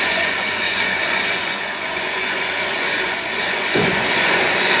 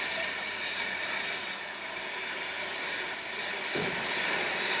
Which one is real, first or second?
second